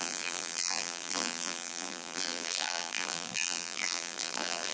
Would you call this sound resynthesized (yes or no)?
yes